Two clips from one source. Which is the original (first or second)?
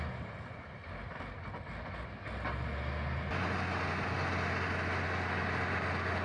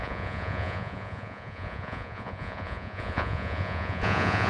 first